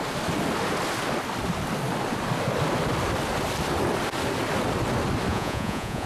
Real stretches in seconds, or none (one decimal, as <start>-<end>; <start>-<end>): 0.0-5.3